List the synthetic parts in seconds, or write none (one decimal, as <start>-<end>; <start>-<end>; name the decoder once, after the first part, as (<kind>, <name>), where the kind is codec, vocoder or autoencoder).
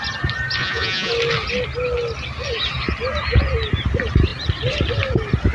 0.6-1.1 (vocoder, Vocos)